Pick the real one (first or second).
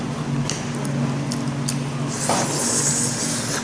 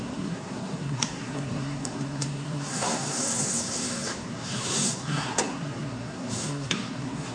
first